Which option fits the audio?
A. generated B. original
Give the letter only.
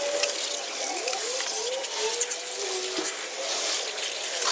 B